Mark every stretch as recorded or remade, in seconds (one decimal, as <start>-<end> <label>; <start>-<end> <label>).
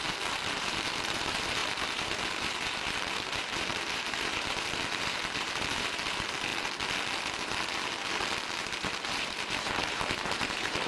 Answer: 0.0-6.5 remade; 6.5-8.6 recorded; 8.6-10.9 remade